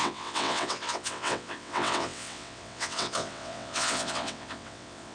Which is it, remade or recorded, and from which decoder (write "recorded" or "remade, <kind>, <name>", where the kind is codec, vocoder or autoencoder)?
remade, vocoder, WaveNeXt